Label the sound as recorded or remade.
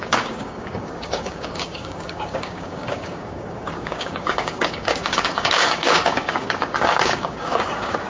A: remade